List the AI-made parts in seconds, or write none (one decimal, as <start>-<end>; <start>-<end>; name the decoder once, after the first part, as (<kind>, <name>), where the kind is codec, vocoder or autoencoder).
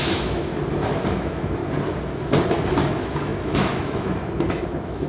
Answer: 0.0-0.5 (autoencoder, DAC-VAE); 1.1-1.6; 2.7-5.1